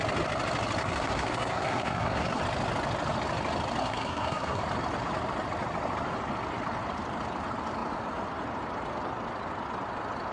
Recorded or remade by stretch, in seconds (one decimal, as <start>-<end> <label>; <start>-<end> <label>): 0.0-0.8 recorded; 0.8-2.4 remade; 2.4-3.8 recorded; 3.8-4.6 remade; 4.6-10.3 recorded